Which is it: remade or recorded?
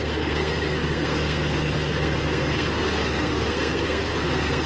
remade